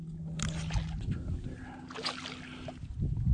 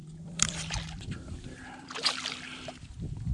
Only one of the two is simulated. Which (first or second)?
second